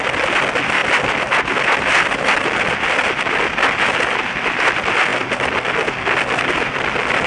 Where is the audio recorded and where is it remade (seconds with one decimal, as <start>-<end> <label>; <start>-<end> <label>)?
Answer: 0.0-7.3 recorded